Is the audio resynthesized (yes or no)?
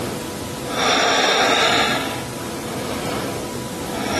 no